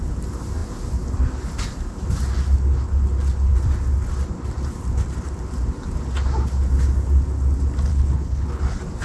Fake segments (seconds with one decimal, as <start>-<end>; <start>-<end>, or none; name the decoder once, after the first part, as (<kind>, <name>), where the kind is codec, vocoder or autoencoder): 7.9-8.6 (codec, HILCodec)